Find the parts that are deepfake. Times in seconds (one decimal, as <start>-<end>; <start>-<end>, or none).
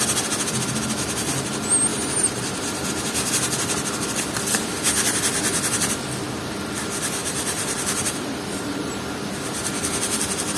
1.9-3.3; 7.2-8.9